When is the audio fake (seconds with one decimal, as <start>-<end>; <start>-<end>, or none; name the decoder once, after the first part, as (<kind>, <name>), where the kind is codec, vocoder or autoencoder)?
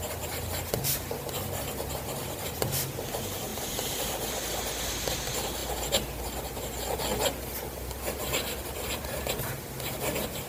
3.5-4.4 (vocoder, BigVGAN v2)